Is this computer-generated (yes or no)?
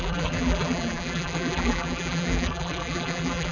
yes